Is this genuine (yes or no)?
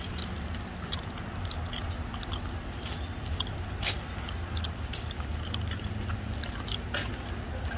yes